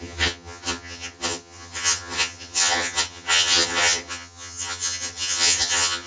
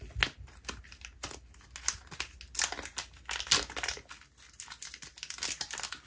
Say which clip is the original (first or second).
second